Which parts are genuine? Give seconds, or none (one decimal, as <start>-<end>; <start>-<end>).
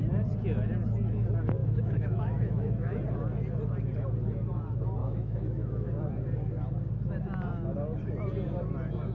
0.0-1.6; 3.0-5.0; 6.0-9.1